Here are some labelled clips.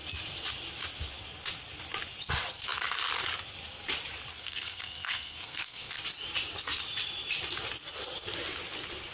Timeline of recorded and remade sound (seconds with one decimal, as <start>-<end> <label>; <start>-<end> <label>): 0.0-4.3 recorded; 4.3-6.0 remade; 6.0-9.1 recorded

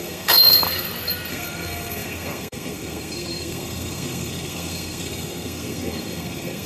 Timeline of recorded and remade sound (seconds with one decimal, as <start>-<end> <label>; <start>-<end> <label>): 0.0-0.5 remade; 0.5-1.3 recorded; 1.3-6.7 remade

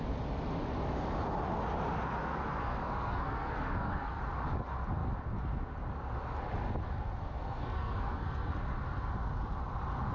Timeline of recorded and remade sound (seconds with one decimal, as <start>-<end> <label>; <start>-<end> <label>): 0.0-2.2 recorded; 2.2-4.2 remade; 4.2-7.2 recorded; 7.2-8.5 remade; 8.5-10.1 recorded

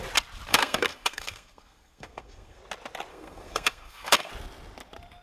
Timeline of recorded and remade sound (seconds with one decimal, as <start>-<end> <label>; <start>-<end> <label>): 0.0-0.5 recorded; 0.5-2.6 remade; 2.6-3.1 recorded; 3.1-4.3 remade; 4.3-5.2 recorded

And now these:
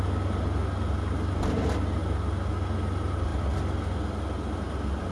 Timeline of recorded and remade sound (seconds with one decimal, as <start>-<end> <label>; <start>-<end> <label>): 0.0-5.1 recorded

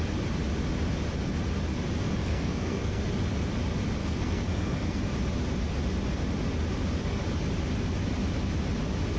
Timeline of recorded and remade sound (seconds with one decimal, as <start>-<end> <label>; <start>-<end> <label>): 0.0-2.2 recorded; 2.2-3.0 remade; 3.0-4.0 recorded; 4.0-5.0 remade; 5.0-9.2 recorded